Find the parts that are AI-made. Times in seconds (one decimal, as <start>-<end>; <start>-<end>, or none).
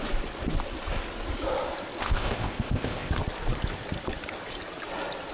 2.0-3.1